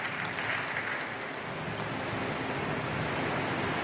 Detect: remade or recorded recorded